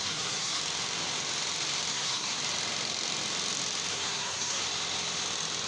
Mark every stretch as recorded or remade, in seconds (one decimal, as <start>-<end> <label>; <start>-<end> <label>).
0.0-0.6 remade; 0.6-1.9 recorded; 1.9-2.4 remade; 2.4-3.9 recorded; 3.9-4.6 remade; 4.6-5.7 recorded